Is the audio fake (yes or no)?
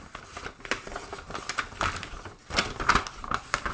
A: no